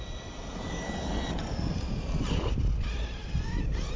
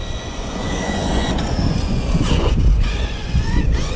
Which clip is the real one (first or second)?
first